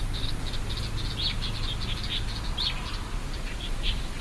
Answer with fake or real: real